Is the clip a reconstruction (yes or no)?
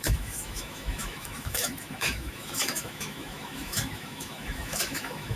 yes